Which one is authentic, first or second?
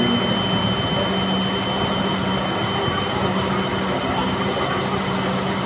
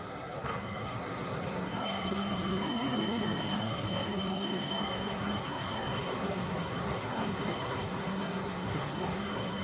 first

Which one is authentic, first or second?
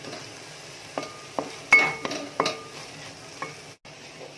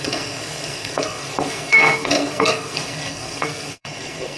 first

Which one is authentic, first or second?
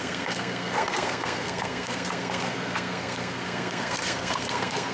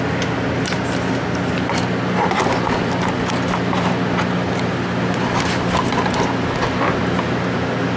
second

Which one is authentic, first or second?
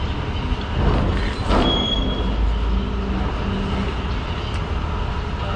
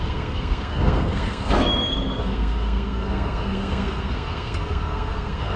first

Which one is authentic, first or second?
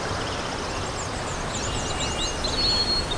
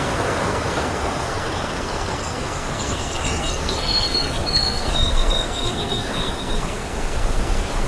first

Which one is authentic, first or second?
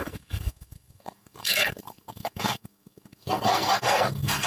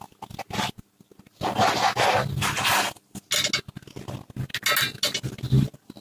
second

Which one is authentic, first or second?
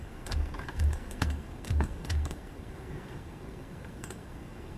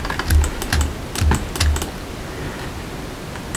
second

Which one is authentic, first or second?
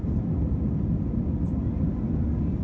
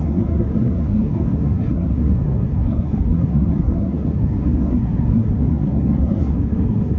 first